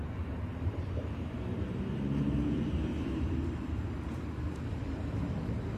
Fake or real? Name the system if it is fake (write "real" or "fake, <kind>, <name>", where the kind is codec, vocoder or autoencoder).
fake, vocoder, BigVGAN v2